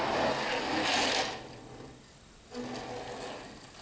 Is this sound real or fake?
real